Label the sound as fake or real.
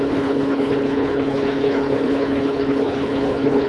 fake